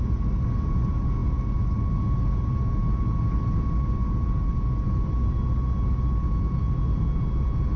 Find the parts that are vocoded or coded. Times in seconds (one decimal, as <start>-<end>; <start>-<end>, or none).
none